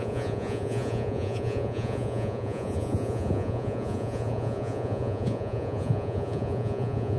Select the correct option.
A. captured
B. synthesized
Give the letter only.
B